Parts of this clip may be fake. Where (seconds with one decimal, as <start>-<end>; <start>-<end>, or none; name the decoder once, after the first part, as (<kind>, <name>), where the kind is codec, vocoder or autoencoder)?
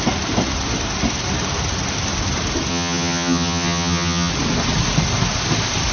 2.7-4.3 (vocoder, HiFi-GAN)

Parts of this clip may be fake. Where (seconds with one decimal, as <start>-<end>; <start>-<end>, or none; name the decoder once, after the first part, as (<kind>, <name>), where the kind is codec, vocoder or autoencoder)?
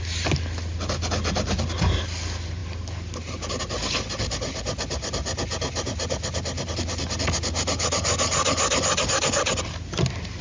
none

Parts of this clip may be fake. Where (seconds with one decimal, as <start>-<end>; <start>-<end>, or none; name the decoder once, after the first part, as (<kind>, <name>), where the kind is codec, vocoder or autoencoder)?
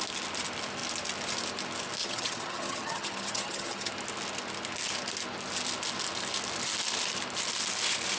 2.0-3.9 (vocoder, HiFi-GAN)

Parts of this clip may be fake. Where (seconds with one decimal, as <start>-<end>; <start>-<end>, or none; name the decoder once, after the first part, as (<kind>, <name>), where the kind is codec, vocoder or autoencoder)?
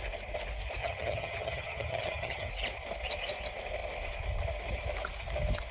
0.8-2.5 (vocoder, HiFi-GAN)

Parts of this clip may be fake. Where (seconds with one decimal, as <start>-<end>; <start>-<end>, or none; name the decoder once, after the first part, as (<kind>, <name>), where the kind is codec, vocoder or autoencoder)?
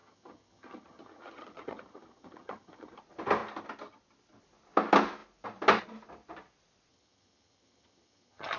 0.0-3.0 (vocoder, HiFi-GAN); 6.9-8.6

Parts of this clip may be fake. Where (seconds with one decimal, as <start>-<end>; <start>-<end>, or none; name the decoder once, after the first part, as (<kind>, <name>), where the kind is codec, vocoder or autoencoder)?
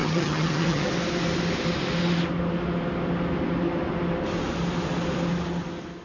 0.0-0.9 (vocoder, HiFi-GAN)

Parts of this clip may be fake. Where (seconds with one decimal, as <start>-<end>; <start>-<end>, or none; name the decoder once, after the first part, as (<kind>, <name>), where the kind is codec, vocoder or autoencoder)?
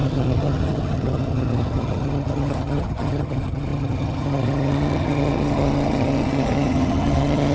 0.0-7.5 (vocoder, HiFi-GAN)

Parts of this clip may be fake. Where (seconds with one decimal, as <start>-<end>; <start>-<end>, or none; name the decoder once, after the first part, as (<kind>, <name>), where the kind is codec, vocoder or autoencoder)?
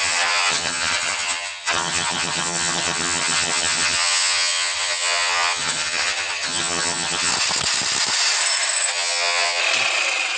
0.0-7.3 (vocoder, HiFi-GAN); 8.9-9.6